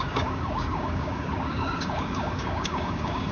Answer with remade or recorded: remade